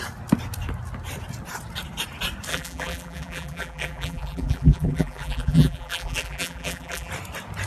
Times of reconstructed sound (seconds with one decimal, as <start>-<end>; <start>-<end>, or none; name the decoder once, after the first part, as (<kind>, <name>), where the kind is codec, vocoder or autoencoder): 2.5-7.1 (vocoder, BigVGAN v2)